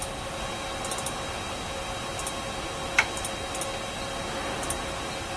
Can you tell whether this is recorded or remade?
recorded